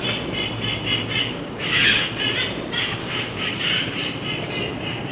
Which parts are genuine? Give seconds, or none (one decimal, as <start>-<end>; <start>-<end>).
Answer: 0.0-1.2; 2.1-3.0; 3.6-5.1